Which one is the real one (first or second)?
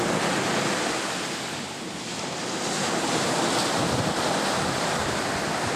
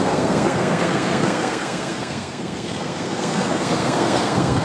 first